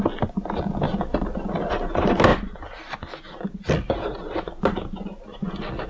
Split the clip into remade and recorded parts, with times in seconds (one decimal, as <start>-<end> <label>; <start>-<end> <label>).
0.0-5.9 recorded